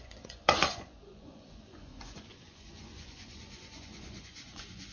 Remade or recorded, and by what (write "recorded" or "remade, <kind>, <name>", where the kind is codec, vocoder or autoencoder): remade, vocoder, Vocos